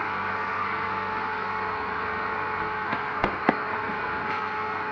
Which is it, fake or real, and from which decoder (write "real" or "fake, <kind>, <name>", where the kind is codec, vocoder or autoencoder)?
fake, codec, SNAC